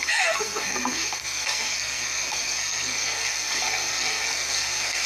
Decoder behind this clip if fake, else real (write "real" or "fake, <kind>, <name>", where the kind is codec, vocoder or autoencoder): fake, codec, SNAC